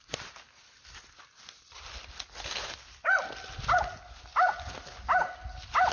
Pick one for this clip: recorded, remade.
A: recorded